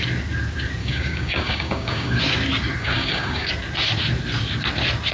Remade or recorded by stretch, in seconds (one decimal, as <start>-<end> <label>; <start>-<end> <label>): 0.0-0.8 recorded; 0.8-2.2 remade; 2.2-2.8 recorded; 2.8-3.5 remade; 3.5-5.1 recorded